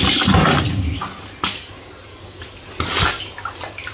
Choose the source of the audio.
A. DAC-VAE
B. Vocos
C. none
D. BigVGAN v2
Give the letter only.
C